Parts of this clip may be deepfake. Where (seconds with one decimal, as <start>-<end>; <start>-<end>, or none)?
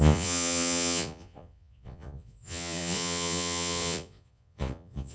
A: 0.0-5.1